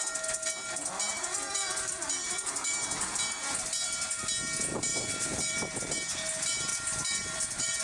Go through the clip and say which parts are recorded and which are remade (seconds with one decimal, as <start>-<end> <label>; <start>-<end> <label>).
0.0-1.1 recorded; 1.1-2.8 remade; 2.8-4.9 recorded; 4.9-5.8 remade; 5.8-6.7 recorded; 6.7-7.8 remade